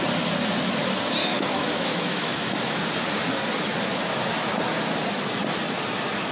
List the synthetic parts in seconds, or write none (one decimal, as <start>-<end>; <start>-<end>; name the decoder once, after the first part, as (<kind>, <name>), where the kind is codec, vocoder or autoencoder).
1.2-2.8 (autoencoder, DAC-VAE)

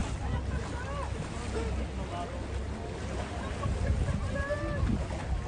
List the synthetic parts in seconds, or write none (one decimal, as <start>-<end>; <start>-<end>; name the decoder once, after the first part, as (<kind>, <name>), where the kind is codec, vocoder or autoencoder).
none

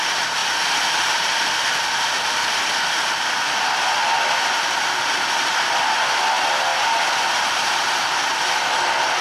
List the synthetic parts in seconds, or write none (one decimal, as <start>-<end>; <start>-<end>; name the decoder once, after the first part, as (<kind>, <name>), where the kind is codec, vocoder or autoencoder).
none

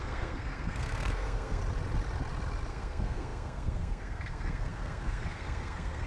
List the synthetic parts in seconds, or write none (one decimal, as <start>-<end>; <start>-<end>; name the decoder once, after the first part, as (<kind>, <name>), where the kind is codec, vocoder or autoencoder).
0.0-1.6 (codec, SNAC); 2.7-6.1